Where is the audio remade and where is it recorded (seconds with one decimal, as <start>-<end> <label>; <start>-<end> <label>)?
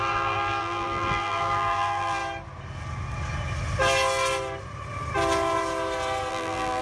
0.0-2.2 remade; 2.2-6.3 recorded; 6.3-6.8 remade